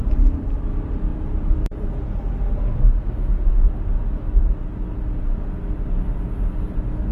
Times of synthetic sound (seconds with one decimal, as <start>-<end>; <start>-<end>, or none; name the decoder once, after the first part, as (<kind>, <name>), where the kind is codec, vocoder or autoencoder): 1.1-2.3 (vocoder, BigVGAN v2)